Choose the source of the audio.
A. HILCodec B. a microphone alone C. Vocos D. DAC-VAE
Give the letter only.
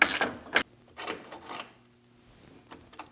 B